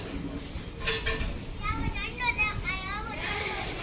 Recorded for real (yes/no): yes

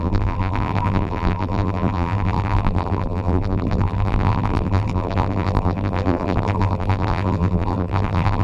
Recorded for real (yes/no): no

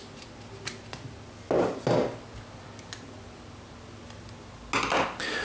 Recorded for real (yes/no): yes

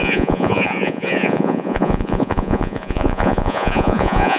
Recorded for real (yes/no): no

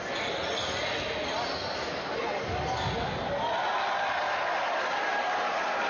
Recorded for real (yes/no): yes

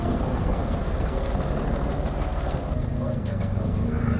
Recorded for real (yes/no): no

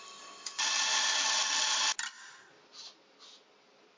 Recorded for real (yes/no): yes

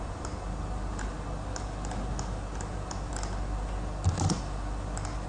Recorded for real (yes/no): yes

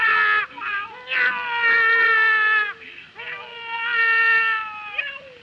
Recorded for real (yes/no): yes